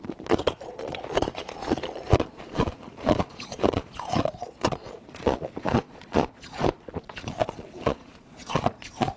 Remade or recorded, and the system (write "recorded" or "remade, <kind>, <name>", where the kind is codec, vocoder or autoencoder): remade, vocoder, Vocos